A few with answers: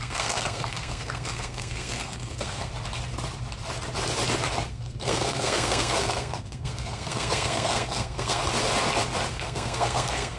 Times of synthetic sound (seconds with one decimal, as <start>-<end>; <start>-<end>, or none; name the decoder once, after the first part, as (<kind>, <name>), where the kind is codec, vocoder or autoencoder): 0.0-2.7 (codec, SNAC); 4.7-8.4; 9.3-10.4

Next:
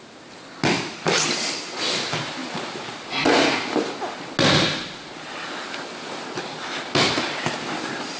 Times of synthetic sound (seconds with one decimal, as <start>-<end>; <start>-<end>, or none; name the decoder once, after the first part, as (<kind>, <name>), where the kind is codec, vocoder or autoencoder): none

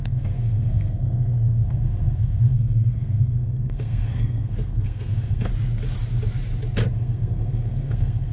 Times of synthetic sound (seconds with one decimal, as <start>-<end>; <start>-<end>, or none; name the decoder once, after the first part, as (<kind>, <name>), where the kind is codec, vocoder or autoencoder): 0.0-5.5 (codec, SNAC); 6.9-8.3